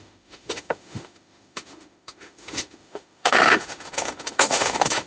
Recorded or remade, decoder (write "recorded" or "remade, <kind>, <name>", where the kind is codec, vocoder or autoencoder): remade, autoencoder, DAC-VAE